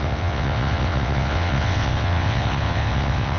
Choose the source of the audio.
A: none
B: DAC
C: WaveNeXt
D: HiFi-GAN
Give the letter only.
C